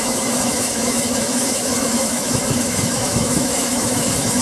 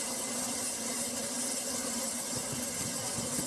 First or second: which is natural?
second